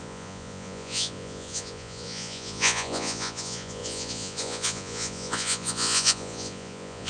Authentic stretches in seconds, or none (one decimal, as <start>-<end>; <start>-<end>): none

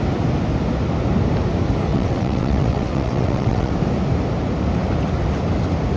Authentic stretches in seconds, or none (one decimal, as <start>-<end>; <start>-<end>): 0.0-1.9; 3.7-6.0